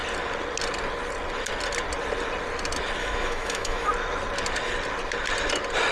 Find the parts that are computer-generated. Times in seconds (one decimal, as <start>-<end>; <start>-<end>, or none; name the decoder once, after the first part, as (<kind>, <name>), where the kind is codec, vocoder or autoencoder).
3.0-3.9 (autoencoder, DAC-VAE)